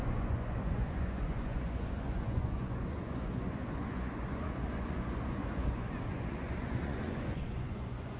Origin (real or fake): fake